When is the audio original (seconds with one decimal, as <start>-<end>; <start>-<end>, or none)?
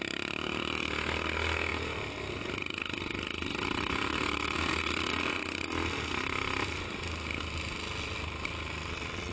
0.0-9.3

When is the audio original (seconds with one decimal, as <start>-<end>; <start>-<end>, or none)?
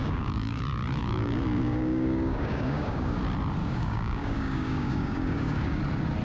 0.6-1.0; 3.2-3.6; 5.8-6.2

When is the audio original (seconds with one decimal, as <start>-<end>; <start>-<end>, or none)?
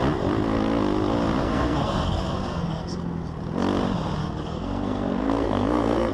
0.0-1.4; 3.2-4.2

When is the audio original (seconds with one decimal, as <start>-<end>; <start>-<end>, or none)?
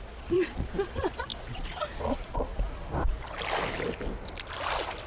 2.5-5.1